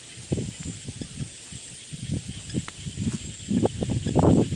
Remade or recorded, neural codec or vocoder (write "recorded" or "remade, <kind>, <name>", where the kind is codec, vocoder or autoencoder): recorded